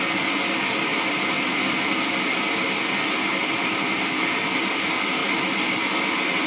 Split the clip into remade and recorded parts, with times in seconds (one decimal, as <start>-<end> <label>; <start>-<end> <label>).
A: 0.0-6.5 recorded